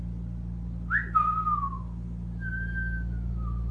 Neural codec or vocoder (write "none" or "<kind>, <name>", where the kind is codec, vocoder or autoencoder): none